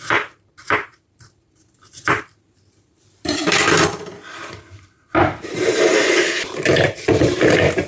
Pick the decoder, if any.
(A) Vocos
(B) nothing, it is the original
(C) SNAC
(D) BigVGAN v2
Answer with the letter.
D